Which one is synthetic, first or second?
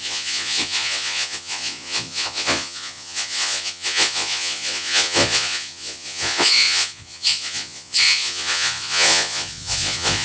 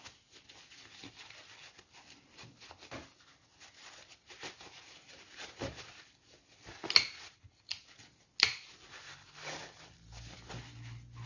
first